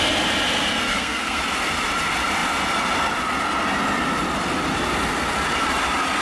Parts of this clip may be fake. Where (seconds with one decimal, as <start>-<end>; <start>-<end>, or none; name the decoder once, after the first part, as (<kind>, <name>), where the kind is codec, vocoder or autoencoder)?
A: 0.9-1.4 (codec, SNAC)